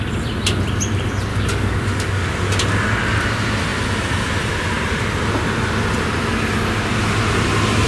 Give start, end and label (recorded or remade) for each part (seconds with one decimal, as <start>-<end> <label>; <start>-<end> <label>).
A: 0.0-1.3 recorded; 1.3-2.3 remade; 2.3-7.9 recorded